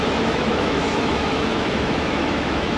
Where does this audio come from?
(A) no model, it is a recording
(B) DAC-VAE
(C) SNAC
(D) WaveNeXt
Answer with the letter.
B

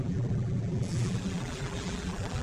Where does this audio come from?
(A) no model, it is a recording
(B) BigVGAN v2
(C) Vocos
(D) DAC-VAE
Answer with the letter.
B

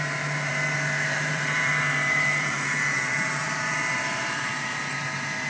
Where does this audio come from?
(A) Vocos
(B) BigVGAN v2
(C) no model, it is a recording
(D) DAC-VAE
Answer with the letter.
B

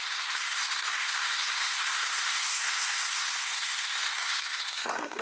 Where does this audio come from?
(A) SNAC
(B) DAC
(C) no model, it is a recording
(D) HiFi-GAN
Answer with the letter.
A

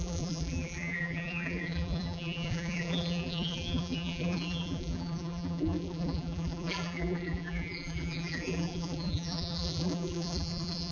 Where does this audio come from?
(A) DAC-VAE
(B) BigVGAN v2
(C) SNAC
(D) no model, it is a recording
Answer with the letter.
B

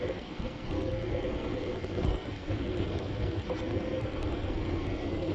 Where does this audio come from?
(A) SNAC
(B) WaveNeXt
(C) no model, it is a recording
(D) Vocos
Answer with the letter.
A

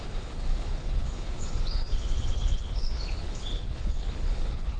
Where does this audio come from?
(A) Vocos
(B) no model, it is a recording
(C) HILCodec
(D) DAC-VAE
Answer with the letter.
C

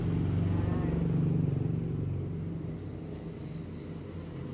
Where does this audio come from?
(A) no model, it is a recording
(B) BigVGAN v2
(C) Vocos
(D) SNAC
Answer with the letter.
A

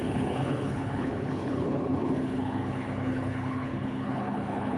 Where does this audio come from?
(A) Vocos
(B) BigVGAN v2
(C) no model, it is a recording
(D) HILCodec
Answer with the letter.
D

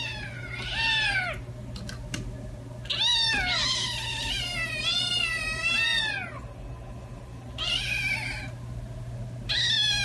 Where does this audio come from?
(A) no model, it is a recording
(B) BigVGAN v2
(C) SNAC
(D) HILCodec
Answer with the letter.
A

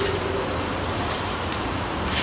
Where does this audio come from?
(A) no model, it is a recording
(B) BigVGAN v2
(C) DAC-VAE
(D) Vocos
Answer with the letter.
B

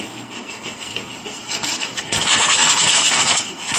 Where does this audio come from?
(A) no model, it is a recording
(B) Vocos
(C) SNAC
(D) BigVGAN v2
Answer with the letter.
C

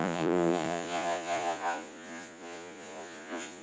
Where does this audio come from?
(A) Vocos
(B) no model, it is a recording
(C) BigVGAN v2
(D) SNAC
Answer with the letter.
A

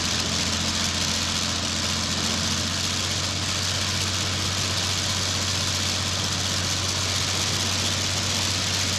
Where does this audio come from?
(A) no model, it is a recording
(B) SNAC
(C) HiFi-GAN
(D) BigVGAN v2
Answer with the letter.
A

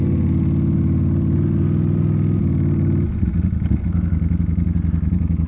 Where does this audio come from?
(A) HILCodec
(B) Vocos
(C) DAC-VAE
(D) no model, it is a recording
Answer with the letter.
D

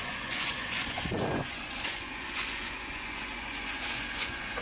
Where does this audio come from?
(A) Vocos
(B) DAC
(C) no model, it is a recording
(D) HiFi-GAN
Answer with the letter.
A